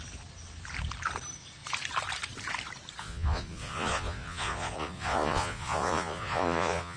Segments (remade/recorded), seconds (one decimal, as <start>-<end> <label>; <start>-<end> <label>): 0.0-3.0 recorded; 3.0-7.0 remade